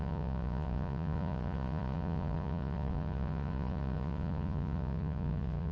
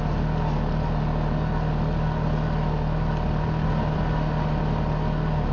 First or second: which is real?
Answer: second